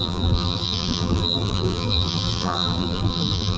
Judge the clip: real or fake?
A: fake